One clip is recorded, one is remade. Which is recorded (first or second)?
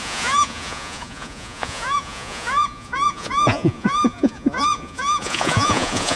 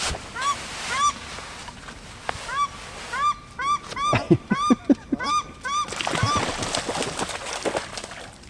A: second